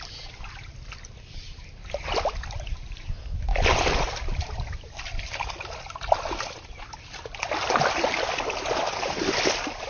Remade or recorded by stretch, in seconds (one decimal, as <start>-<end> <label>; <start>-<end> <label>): 0.0-9.9 recorded